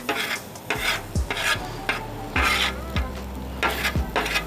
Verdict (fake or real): real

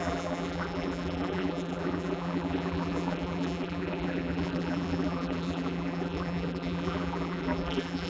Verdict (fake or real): fake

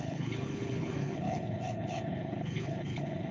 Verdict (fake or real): fake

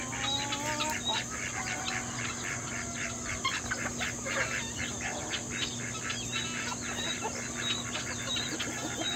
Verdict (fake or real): real